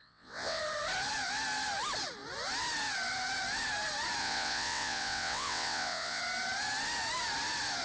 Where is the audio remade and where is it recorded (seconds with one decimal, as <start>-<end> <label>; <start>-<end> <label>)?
0.0-0.6 remade; 0.6-4.2 recorded; 4.2-6.2 remade; 6.2-7.8 recorded